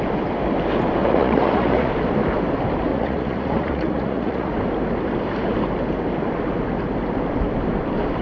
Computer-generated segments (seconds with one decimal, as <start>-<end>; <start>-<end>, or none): 1.0-1.9; 2.9-4.5